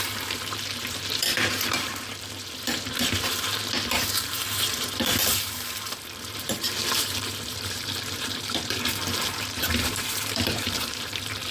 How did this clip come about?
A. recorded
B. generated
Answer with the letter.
B